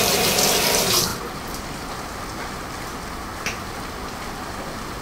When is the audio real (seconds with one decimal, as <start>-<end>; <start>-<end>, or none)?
0.0-5.0